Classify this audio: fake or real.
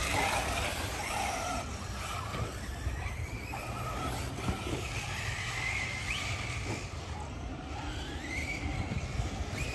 fake